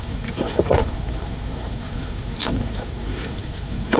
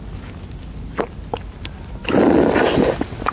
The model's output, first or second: first